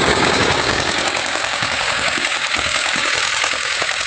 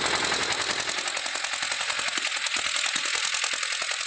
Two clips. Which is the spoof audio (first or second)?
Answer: first